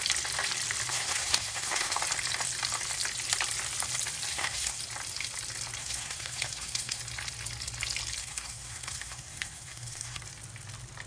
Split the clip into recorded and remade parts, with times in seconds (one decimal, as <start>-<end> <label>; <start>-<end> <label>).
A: 0.0-0.9 recorded; 0.9-2.0 remade; 2.0-4.3 recorded; 4.3-4.8 remade; 4.8-5.8 recorded; 5.8-7.0 remade; 7.0-8.2 recorded; 8.2-10.2 remade; 10.2-11.1 recorded